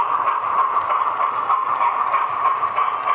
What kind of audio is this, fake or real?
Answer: real